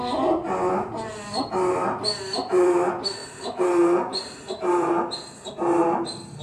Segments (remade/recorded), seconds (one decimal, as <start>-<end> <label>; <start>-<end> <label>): 0.0-3.2 recorded; 3.2-4.9 remade; 4.9-6.4 recorded